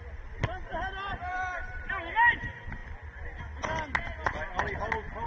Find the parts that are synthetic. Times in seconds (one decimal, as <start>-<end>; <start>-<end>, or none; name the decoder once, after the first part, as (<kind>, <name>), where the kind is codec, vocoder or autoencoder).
none